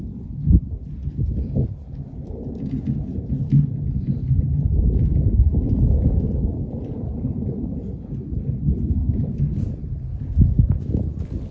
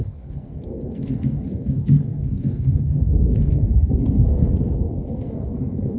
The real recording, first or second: first